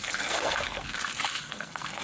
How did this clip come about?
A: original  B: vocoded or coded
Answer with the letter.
B